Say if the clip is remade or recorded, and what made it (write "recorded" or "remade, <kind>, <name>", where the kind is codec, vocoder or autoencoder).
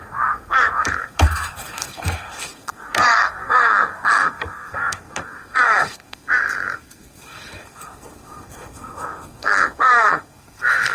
remade, codec, SNAC